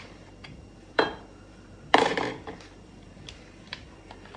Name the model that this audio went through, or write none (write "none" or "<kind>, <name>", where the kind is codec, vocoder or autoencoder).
vocoder, BigVGAN v2